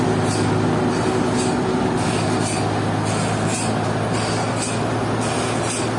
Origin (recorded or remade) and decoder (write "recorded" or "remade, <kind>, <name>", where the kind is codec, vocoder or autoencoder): recorded